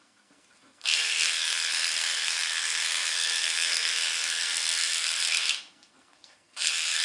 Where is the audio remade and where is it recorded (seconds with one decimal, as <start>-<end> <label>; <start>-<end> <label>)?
0.0-7.0 remade